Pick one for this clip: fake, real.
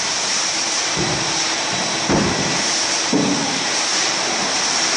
fake